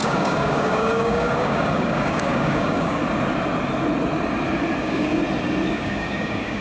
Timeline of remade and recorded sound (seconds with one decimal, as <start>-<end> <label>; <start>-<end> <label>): 0.0-3.0 remade; 3.0-4.8 recorded; 4.8-5.2 remade; 5.2-5.7 recorded; 5.7-6.6 remade